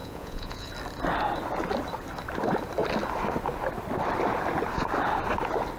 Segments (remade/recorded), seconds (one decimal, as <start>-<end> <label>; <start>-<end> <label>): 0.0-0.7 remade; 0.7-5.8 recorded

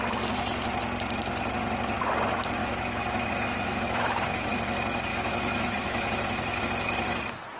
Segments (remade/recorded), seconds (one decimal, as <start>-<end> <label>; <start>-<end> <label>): 0.0-2.6 recorded; 2.6-4.5 remade; 4.5-5.1 recorded; 5.1-6.6 remade; 6.6-7.6 recorded

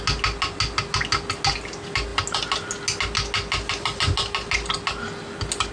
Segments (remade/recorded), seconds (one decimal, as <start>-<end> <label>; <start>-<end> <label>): 0.0-5.7 recorded

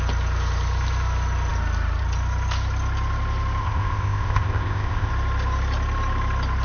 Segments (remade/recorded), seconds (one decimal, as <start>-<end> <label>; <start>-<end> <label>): 0.0-3.6 recorded; 3.6-5.1 remade; 5.1-6.6 recorded

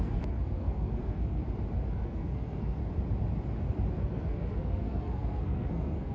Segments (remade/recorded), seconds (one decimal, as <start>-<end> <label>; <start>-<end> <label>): 0.0-1.4 remade; 1.4-1.9 recorded; 1.9-2.8 remade; 2.8-3.9 recorded; 3.9-6.1 remade